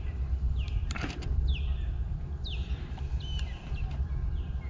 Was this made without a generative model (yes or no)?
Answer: yes